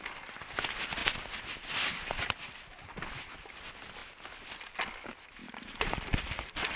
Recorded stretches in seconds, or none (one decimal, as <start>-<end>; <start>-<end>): 0.0-5.4